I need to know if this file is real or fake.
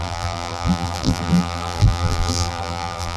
fake